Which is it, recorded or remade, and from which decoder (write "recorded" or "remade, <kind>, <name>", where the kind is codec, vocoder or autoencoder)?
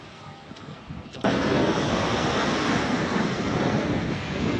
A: remade, codec, SNAC